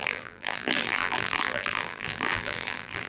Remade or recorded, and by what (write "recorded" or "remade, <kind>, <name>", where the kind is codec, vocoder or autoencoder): remade, vocoder, BigVGAN v2